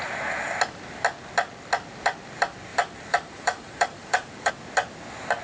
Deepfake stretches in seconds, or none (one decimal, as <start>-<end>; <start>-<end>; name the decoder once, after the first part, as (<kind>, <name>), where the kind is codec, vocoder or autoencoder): 2.7-4.5 (vocoder, BigVGAN v2)